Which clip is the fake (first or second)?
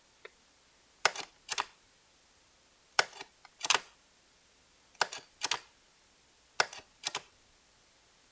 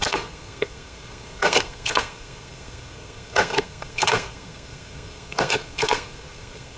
second